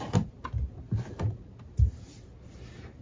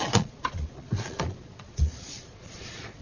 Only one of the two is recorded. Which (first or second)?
first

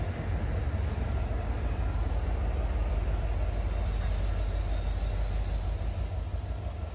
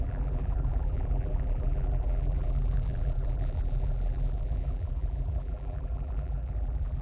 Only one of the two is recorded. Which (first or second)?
first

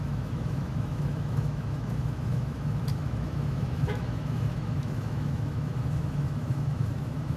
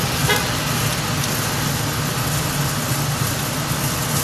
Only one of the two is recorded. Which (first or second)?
second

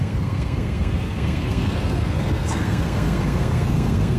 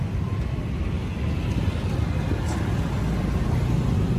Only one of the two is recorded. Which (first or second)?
second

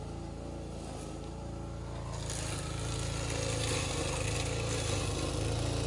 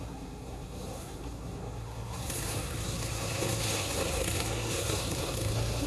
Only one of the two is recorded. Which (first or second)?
first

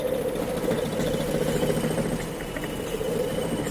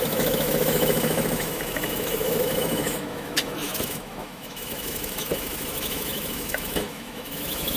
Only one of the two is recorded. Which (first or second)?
first